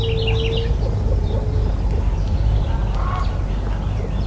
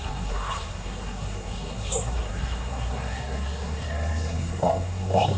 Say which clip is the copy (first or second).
second